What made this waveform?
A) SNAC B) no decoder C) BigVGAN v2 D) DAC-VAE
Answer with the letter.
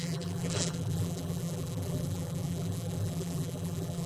C